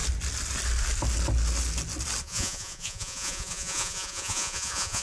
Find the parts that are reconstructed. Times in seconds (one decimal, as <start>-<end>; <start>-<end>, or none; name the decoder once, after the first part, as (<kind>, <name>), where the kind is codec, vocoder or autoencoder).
2.2-5.0 (vocoder, Vocos)